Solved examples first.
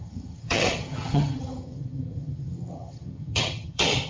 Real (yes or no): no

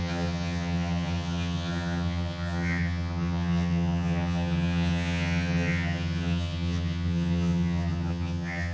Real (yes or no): no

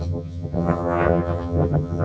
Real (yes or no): no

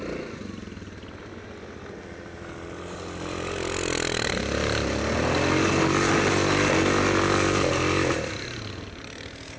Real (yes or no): yes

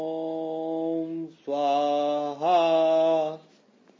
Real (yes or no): yes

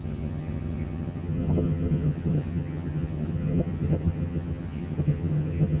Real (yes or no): no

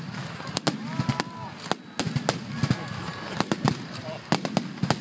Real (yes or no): yes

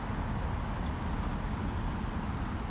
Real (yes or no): yes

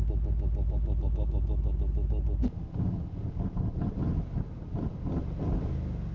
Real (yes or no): yes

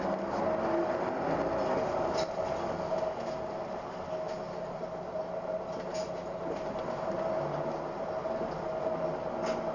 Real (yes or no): yes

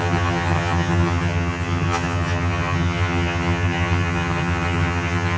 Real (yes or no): no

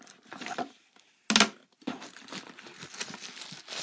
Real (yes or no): yes